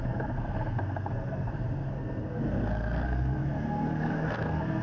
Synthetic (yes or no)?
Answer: yes